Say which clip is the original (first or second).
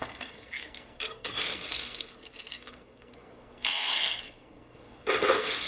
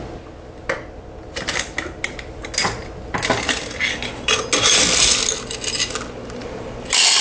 second